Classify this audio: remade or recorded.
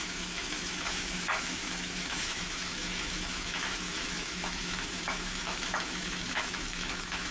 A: remade